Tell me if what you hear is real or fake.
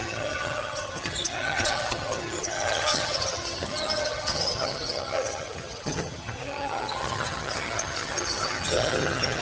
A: fake